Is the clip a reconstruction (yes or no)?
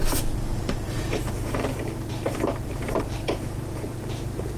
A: yes